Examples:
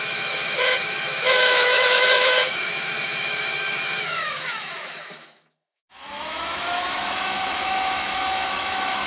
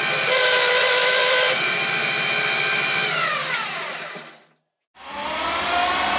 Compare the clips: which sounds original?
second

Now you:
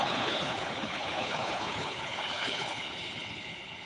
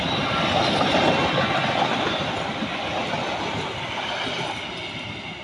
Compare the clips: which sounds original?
second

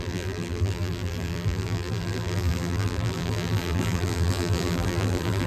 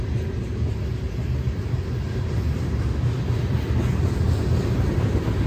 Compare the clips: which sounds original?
second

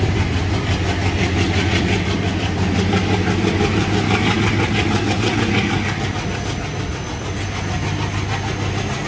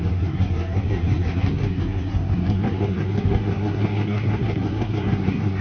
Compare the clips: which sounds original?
first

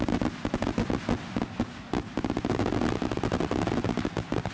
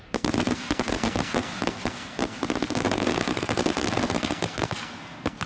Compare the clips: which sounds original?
first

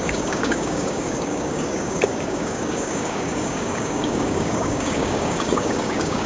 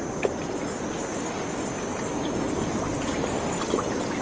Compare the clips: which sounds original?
second